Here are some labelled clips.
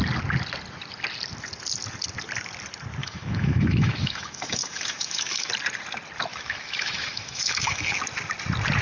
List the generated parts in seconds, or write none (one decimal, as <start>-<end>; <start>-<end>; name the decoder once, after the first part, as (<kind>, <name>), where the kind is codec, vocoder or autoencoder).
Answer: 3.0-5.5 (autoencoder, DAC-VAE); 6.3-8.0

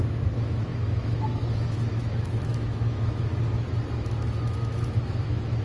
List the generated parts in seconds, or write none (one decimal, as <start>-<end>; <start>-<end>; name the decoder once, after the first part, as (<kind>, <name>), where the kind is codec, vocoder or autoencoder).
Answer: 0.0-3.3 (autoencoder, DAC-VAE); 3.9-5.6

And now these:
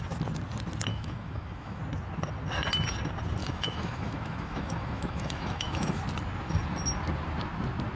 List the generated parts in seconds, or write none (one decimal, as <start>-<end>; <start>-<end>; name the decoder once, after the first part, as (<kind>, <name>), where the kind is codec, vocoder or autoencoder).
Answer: 0.9-1.8 (autoencoder, DAC-VAE); 3.4-6.0